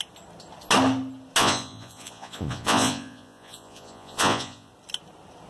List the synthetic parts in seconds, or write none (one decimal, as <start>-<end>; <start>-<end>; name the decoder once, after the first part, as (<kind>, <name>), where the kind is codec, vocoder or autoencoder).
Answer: 1.4-4.7 (vocoder, Vocos)